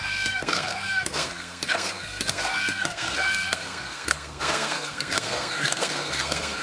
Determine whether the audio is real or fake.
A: fake